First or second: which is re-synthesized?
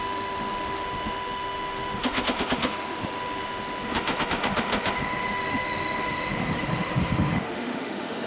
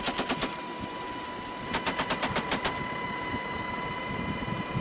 first